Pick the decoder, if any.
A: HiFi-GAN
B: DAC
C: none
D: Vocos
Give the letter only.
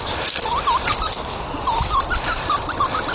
C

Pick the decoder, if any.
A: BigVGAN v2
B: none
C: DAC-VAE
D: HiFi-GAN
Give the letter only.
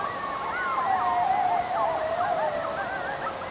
B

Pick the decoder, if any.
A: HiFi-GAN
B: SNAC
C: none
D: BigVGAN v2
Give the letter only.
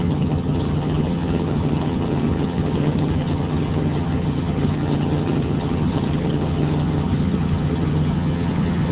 A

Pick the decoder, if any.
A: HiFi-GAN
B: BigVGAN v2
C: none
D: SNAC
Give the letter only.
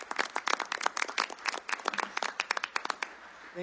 C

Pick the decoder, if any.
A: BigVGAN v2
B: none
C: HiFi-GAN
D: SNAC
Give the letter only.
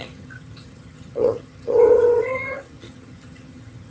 C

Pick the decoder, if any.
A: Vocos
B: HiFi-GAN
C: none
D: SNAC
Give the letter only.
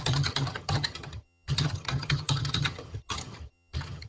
B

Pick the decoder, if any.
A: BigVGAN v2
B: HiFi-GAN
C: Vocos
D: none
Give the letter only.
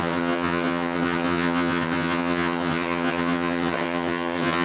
B